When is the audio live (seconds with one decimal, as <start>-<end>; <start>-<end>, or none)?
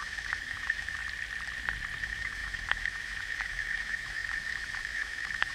1.0-2.0